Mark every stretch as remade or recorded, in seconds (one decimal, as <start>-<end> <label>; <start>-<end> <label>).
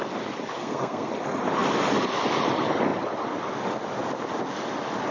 0.0-0.6 recorded; 0.6-1.1 remade; 1.1-5.1 recorded